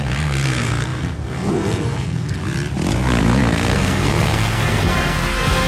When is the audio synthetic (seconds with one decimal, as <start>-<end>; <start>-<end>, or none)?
0.0-2.4; 3.2-5.7